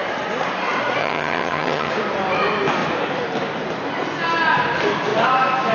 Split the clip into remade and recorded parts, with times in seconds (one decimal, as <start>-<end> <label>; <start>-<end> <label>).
0.0-1.0 recorded; 1.0-1.9 remade; 1.9-5.7 recorded